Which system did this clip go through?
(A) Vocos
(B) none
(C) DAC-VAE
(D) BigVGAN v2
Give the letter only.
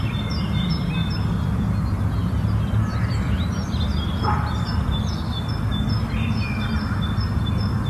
B